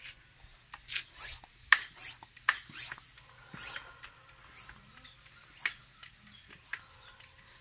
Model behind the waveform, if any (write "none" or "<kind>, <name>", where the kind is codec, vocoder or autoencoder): none